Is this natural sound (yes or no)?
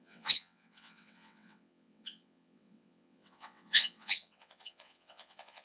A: no